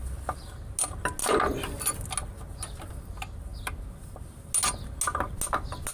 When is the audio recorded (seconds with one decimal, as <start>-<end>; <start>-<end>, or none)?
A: 0.0-5.9